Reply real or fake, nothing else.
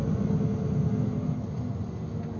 real